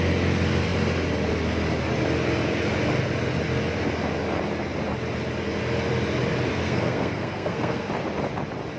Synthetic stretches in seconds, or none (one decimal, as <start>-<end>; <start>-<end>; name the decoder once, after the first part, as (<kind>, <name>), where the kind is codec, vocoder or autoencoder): 6.5-7.9 (codec, SNAC)